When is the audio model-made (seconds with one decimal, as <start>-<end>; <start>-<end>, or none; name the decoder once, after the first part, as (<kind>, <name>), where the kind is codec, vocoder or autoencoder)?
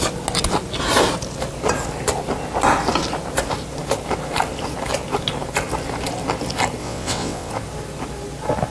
6.8-7.5 (vocoder, WaveNeXt)